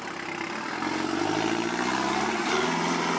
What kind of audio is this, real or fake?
real